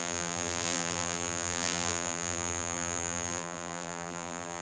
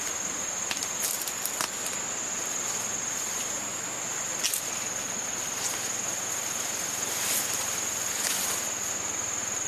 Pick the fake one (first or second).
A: first